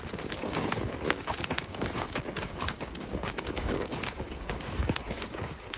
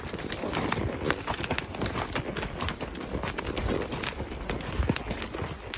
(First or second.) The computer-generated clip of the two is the first